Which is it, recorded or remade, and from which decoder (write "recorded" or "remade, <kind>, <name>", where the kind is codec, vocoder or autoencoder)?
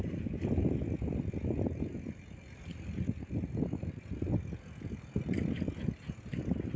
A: recorded